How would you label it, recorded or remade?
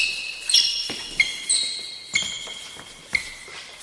recorded